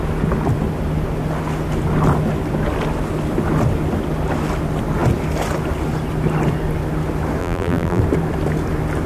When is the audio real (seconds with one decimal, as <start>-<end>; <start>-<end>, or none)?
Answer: 0.0-7.4; 8.0-9.1